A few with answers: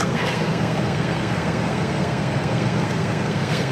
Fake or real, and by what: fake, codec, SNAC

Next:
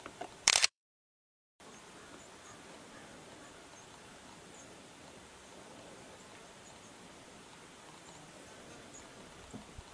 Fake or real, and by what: fake, vocoder, BigVGAN v2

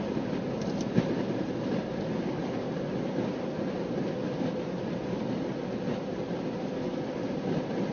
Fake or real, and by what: real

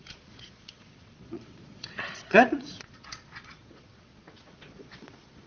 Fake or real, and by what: fake, vocoder, Vocos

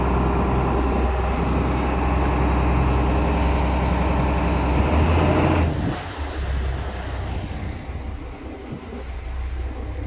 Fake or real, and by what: real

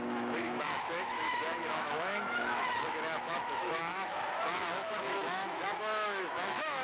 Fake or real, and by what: fake, autoencoder, DAC-VAE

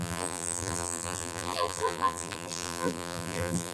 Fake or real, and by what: fake, vocoder, BigVGAN v2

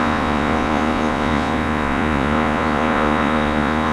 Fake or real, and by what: fake, vocoder, Vocos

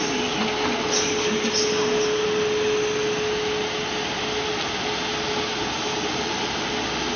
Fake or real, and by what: real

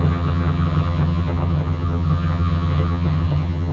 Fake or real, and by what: fake, vocoder, HiFi-GAN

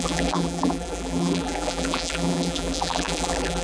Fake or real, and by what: fake, vocoder, BigVGAN v2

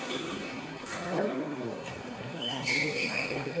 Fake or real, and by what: fake, codec, SNAC